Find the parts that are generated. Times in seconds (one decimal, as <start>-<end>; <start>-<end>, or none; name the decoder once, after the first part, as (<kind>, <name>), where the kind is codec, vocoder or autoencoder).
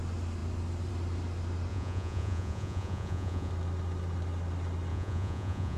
1.7-3.5 (vocoder, Vocos); 4.9-5.8